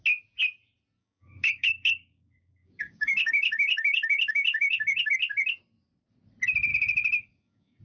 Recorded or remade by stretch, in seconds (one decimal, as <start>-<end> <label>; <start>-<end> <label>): 0.0-1.0 recorded; 1.0-5.1 remade; 5.1-6.7 recorded; 6.7-7.8 remade